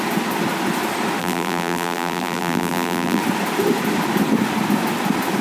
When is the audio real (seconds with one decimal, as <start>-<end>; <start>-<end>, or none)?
0.0-1.2; 3.2-5.4